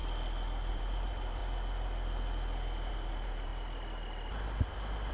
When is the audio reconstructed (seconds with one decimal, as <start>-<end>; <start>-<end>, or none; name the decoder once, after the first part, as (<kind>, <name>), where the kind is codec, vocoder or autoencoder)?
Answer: 0.7-1.4 (vocoder, BigVGAN v2); 2.9-3.5